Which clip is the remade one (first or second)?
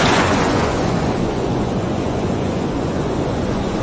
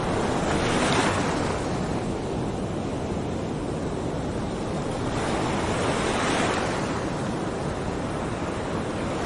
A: first